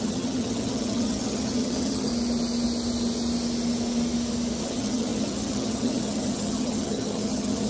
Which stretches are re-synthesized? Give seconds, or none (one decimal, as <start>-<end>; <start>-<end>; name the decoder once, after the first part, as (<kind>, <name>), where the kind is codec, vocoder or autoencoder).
0.0-2.1 (vocoder, HiFi-GAN); 4.6-7.7

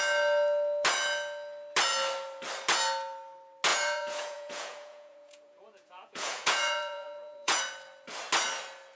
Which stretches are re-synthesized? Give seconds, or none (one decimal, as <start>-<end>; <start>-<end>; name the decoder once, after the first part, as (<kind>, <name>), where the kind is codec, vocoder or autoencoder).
3.7-7.6 (vocoder, Vocos)

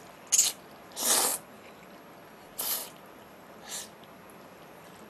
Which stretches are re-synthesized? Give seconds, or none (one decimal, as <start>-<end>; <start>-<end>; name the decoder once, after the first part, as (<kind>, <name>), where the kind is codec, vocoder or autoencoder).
none

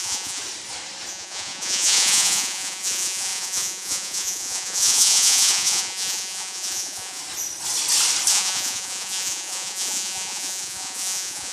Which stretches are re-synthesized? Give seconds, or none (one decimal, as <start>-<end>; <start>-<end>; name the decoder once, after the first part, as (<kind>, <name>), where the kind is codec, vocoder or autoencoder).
0.0-0.4 (vocoder, Vocos); 1.1-7.2; 8.3-11.5

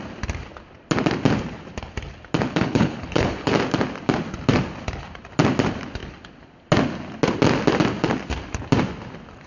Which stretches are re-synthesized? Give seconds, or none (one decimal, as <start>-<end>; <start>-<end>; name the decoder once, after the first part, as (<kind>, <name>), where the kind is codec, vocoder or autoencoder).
2.5-3.5 (codec, HILCodec)

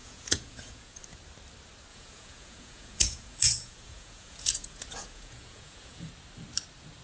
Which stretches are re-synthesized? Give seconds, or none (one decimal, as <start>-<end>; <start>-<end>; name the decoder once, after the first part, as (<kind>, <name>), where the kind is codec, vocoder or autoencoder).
0.0-1.0 (vocoder, Vocos); 1.9-6.1

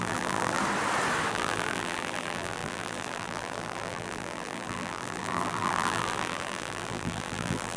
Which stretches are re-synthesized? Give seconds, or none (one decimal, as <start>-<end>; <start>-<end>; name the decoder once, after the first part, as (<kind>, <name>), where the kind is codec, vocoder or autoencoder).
0.0-0.6 (vocoder, BigVGAN v2); 1.3-7.8